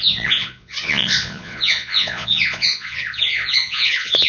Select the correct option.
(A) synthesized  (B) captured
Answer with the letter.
A